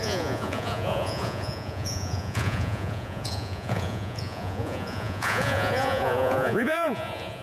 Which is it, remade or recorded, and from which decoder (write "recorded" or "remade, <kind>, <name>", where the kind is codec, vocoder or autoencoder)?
remade, vocoder, Vocos